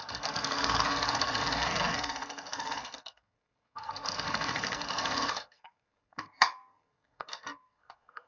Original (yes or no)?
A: no